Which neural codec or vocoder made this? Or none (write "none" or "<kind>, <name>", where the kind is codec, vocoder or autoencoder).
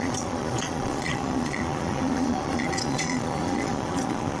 vocoder, Vocos